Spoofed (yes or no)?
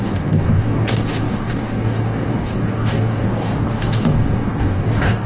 yes